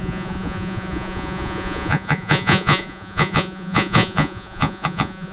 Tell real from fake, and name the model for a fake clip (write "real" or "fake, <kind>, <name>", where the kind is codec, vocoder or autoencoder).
fake, vocoder, Vocos